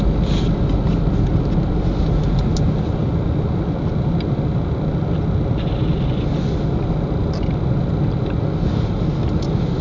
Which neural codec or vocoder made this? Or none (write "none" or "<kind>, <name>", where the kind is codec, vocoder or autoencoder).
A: none